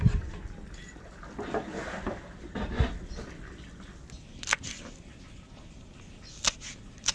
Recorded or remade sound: recorded